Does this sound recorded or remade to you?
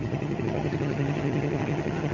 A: remade